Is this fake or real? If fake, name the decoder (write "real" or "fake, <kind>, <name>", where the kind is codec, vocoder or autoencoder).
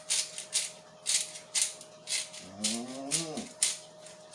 real